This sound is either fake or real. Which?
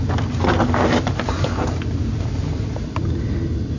real